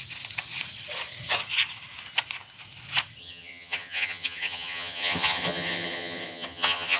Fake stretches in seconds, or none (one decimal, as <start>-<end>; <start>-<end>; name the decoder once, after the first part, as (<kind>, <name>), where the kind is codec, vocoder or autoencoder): 3.2-7.0 (vocoder, HiFi-GAN)